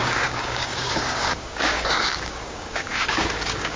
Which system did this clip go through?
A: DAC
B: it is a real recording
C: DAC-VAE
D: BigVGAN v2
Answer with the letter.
A